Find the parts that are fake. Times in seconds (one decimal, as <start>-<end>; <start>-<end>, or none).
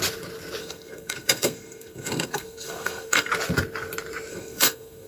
0.6-3.3; 4.3-5.1